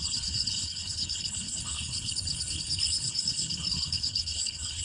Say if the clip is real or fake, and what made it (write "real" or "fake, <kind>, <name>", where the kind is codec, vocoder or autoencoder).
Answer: fake, codec, HILCodec